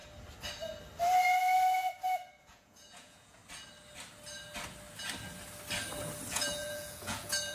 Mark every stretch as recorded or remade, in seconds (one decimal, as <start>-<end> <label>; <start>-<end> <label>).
0.0-2.4 recorded; 2.4-3.4 remade; 3.4-6.3 recorded; 6.3-7.5 remade